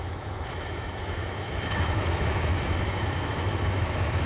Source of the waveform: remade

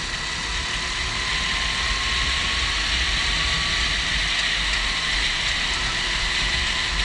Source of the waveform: recorded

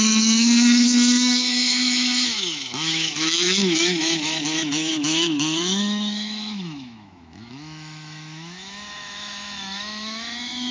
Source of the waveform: remade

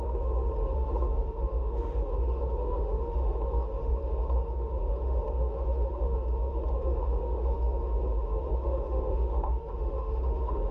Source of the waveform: remade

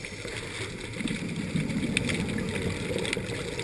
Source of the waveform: recorded